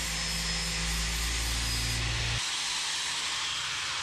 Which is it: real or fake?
real